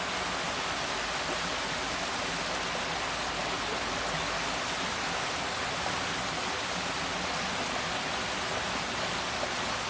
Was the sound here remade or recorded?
recorded